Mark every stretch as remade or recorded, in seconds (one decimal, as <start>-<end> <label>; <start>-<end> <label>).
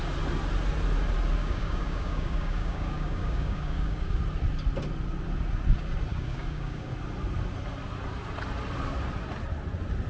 0.0-1.4 recorded; 1.4-4.2 remade; 4.2-6.1 recorded; 6.1-6.9 remade; 6.9-10.1 recorded